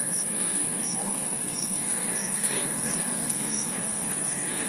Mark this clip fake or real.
fake